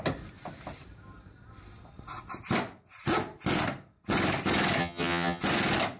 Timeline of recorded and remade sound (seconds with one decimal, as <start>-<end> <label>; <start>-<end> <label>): 0.0-4.8 recorded; 4.8-5.4 remade; 5.4-6.0 recorded